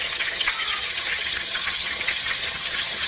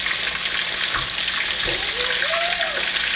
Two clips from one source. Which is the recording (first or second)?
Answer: second